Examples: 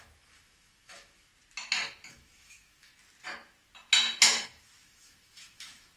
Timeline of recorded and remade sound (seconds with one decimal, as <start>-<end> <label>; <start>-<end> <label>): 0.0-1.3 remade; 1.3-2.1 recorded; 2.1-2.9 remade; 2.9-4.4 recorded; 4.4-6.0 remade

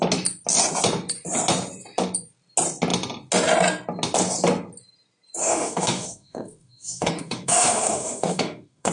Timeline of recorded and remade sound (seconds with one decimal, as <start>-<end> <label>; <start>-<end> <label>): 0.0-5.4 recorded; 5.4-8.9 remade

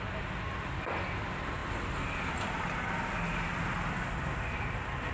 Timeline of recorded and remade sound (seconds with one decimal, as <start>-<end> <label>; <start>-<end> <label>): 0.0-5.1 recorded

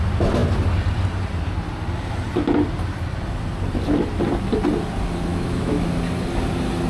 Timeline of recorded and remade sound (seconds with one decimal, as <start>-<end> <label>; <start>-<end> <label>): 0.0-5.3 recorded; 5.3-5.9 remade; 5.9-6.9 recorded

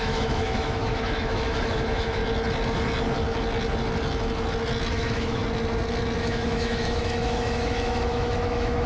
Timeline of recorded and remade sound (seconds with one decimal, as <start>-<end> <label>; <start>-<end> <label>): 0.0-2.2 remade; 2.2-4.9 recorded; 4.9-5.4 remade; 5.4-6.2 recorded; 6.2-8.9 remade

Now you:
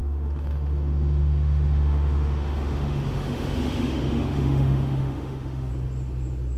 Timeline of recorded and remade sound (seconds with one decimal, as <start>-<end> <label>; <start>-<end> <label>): 0.0-5.7 remade; 5.7-6.6 recorded